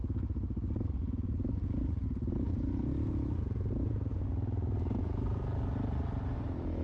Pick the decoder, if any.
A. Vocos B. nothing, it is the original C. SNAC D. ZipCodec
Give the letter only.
B